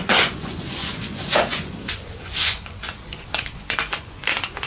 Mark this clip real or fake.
fake